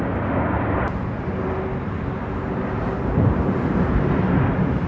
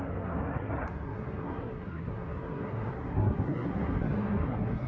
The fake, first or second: second